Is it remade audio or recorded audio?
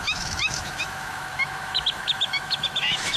remade